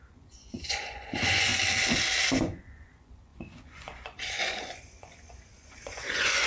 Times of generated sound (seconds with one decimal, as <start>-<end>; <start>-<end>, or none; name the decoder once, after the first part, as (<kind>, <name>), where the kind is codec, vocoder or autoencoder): 0.0-1.5 (vocoder, Vocos); 2.2-6.5